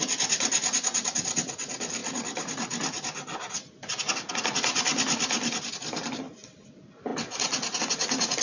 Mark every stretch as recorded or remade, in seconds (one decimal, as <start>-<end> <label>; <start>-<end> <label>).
0.0-8.4 recorded